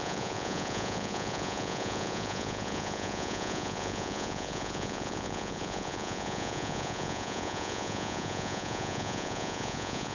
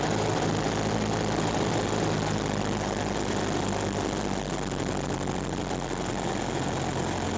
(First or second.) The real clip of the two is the second